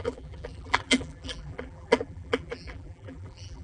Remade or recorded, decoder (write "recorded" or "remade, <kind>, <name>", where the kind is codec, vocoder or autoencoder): remade, vocoder, BigVGAN v2